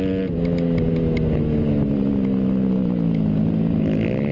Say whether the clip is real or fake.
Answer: real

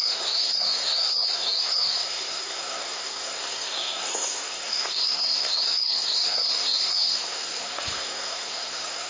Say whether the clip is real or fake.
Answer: fake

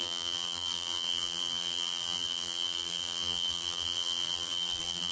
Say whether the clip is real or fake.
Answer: fake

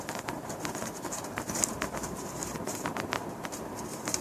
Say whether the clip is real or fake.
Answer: fake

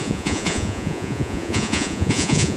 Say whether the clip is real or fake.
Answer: fake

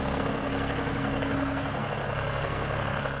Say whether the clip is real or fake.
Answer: fake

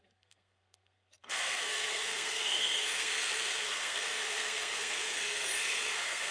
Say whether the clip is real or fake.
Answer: fake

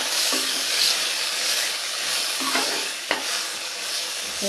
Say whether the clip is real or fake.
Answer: fake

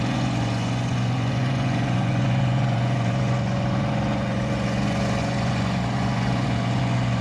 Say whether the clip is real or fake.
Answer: fake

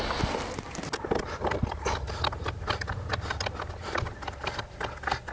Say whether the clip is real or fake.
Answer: real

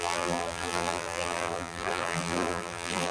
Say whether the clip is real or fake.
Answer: fake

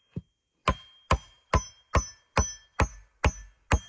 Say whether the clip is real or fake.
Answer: real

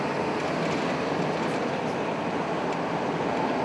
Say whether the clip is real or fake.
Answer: real